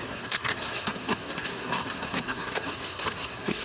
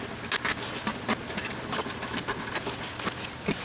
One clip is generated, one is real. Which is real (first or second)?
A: second